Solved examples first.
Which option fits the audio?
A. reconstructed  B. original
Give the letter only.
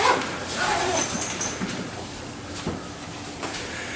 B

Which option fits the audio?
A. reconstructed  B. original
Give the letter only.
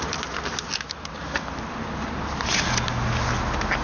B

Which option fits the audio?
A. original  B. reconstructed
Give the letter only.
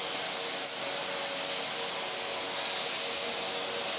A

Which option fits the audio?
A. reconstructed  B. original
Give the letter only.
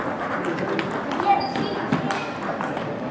B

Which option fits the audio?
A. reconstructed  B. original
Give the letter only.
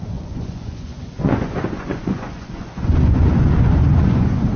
A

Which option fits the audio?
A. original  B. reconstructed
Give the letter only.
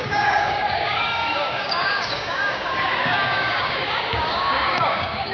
B